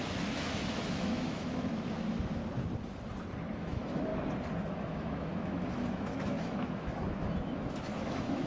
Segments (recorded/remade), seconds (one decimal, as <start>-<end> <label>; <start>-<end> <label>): 0.0-2.4 remade; 2.4-3.5 recorded; 3.5-4.1 remade; 4.1-4.6 recorded; 4.6-8.5 remade